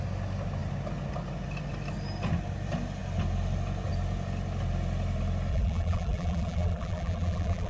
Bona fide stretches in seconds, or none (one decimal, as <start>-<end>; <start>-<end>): 0.0-5.5